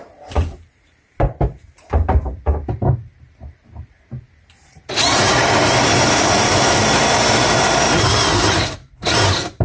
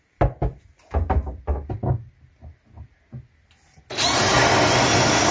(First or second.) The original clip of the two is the second